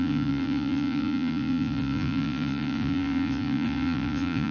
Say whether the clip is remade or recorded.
remade